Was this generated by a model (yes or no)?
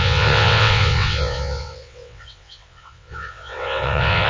yes